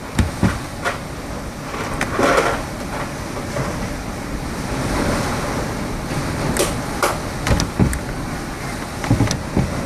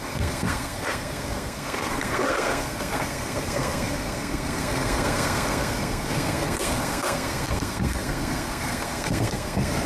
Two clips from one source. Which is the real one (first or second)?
first